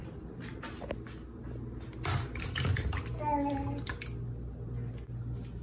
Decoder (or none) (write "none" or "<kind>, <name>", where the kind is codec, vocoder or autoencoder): none